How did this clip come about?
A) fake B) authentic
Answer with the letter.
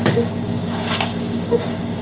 A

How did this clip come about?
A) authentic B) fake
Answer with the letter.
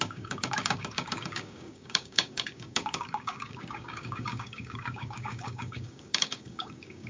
B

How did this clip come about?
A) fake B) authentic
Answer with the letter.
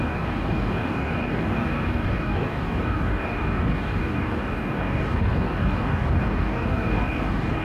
A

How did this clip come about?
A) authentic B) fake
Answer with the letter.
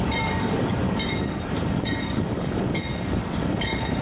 B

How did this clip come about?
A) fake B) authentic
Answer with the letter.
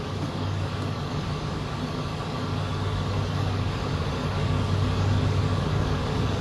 A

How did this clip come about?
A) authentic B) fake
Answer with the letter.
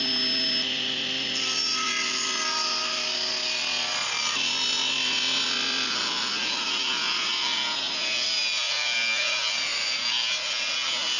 A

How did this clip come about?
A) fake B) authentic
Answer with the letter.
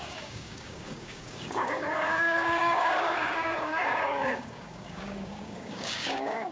A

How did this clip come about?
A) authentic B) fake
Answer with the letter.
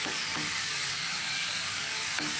B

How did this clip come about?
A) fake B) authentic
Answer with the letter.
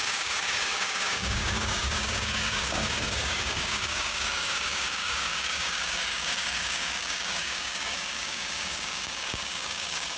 A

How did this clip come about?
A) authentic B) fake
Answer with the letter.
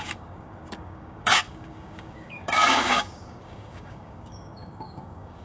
B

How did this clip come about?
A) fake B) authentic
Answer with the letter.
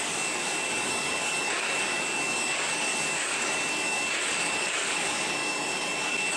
A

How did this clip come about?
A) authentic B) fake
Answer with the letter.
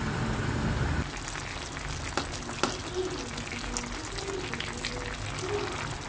A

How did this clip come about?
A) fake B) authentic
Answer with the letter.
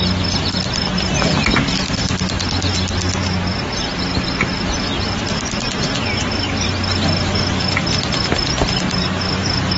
B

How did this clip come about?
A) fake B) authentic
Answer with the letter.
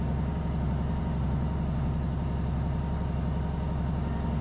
B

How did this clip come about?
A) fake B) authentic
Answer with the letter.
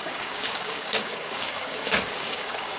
A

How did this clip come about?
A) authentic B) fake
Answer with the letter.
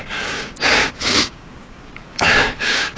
B